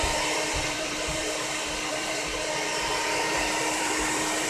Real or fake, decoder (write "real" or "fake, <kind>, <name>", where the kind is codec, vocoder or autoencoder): fake, vocoder, BigVGAN v2